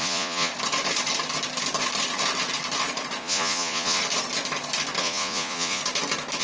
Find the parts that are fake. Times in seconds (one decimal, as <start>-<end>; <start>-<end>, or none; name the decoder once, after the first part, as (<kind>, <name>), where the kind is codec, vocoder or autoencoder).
0.0-0.5 (vocoder, Vocos); 3.2-4.0; 5.0-5.8